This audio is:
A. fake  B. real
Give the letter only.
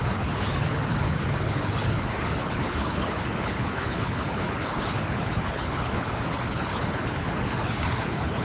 A